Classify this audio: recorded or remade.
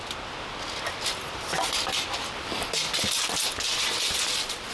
recorded